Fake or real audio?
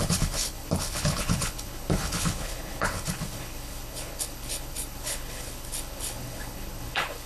fake